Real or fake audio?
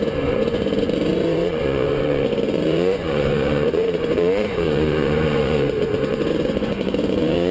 fake